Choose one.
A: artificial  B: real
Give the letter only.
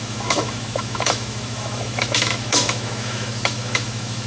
A